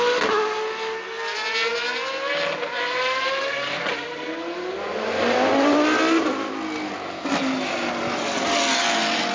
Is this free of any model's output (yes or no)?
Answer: yes